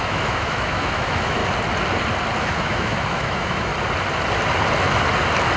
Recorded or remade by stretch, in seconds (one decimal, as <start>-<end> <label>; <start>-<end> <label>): 0.0-1.4 remade; 1.4-2.4 recorded; 2.4-3.7 remade; 3.7-5.6 recorded